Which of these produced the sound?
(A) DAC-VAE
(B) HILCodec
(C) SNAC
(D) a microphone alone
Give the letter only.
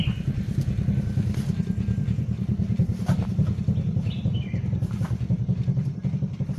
D